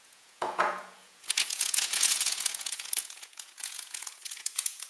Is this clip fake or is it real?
fake